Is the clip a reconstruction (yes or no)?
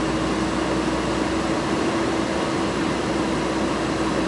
no